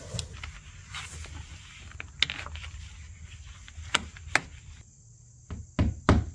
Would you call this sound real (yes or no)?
yes